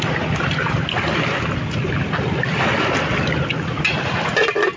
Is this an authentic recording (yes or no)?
yes